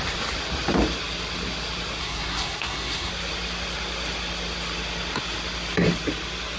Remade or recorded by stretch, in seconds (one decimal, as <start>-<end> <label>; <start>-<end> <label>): 0.0-2.0 recorded; 2.0-3.1 remade; 3.1-6.6 recorded